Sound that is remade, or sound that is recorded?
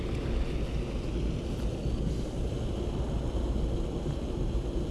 recorded